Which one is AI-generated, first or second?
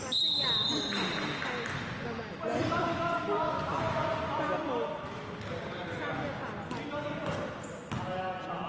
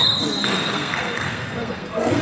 second